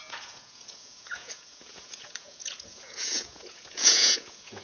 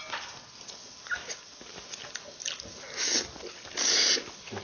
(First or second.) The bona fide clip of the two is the second